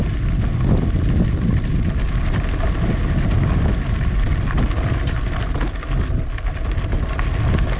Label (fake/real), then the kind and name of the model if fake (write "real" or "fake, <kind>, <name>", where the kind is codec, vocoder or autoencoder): real